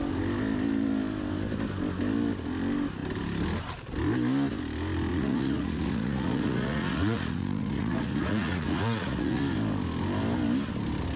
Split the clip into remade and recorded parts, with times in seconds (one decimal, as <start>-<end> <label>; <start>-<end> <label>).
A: 0.0-5.1 recorded; 5.1-9.4 remade; 9.4-11.2 recorded